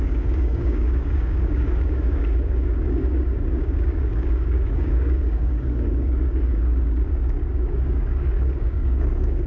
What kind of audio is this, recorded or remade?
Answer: remade